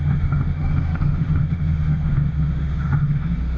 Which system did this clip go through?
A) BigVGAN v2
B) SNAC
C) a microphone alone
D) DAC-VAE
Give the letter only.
D